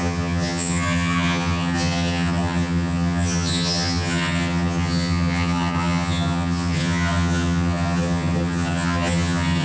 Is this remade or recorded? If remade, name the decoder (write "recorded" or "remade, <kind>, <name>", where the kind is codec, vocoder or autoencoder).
remade, vocoder, HiFi-GAN